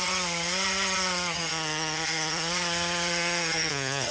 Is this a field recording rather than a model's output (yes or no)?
no